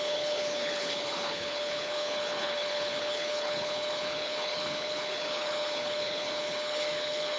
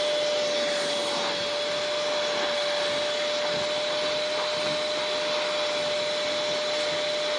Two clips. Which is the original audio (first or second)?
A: second